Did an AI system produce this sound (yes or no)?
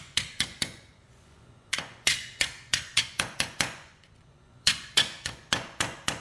yes